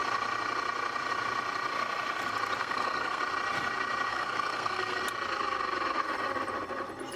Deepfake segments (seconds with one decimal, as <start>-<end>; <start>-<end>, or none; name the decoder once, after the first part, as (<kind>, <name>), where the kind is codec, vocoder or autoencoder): 2.6-3.2 (codec, SNAC); 4.1-5.0